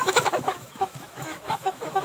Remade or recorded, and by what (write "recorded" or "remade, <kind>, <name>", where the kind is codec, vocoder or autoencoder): remade, autoencoder, DAC-VAE